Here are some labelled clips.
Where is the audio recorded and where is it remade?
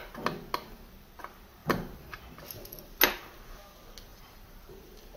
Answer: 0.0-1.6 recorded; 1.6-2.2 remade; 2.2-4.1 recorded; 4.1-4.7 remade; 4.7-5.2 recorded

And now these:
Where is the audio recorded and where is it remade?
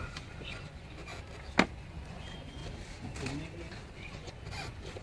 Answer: 0.0-1.1 remade; 1.1-1.7 recorded; 1.7-2.6 remade; 2.6-3.9 recorded; 3.9-5.0 remade